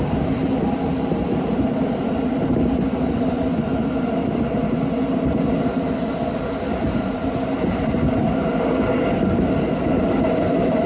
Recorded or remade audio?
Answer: recorded